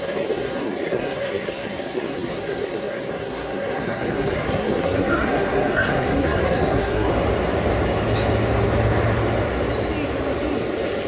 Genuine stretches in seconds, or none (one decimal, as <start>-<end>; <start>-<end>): 7.1-11.1